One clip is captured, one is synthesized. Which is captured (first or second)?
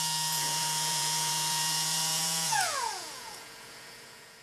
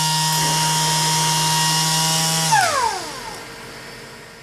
second